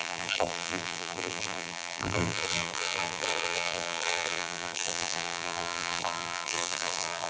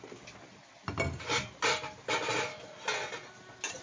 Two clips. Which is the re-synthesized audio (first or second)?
first